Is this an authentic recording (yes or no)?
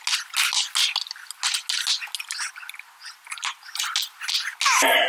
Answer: yes